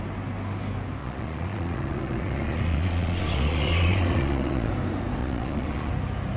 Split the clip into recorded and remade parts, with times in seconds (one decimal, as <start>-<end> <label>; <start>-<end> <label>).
0.0-1.0 recorded; 1.0-4.7 remade; 4.7-5.2 recorded; 5.2-5.9 remade; 5.9-6.4 recorded